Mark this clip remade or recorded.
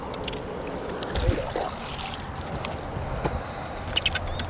recorded